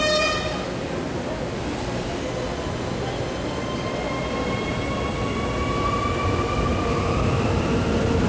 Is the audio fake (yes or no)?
no